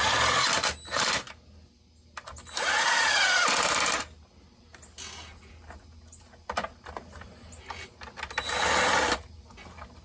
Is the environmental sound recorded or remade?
recorded